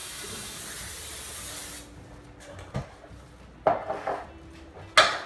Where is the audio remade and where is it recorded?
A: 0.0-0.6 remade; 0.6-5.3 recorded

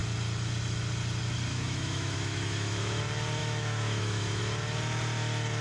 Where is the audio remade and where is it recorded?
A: 0.0-1.5 recorded; 1.5-3.0 remade; 3.0-3.4 recorded; 3.4-4.4 remade; 4.4-5.6 recorded

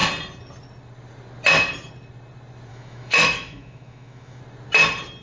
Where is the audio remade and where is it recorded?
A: 0.0-2.7 recorded; 2.7-4.4 remade; 4.4-5.2 recorded

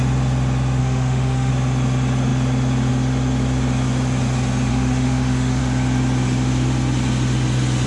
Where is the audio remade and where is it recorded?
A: 0.0-0.8 recorded; 0.8-1.5 remade; 1.5-4.7 recorded; 4.7-5.6 remade; 5.6-7.9 recorded